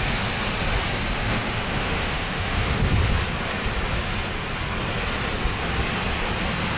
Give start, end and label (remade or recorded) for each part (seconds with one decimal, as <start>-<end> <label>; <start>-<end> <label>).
0.0-1.2 recorded; 1.2-2.9 remade; 2.9-6.8 recorded